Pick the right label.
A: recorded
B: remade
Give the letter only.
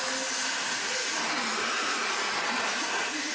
A